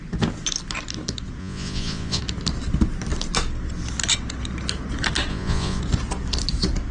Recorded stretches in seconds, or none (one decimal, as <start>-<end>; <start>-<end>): 0.0-1.4; 2.2-5.3; 5.8-6.9